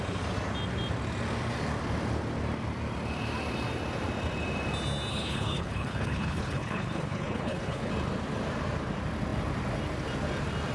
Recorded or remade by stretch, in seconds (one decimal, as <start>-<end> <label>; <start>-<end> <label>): 0.0-5.1 recorded; 5.1-7.9 remade; 7.9-10.7 recorded